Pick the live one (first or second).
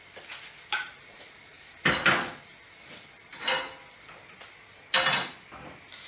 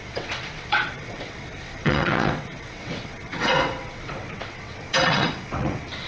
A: first